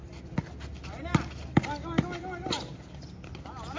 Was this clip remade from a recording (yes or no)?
no